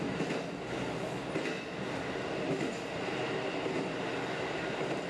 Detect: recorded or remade recorded